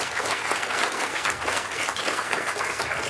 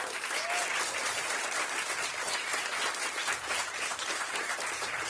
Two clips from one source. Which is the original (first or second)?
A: second